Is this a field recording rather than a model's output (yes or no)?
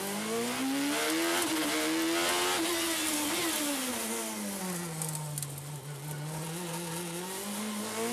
yes